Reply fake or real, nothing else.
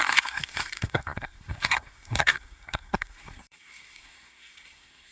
fake